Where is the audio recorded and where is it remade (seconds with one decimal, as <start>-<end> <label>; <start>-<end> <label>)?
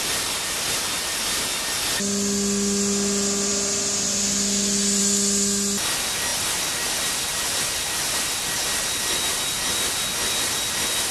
0.0-11.1 recorded